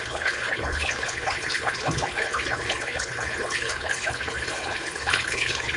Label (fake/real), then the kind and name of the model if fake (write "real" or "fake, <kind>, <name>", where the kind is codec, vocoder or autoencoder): fake, codec, HILCodec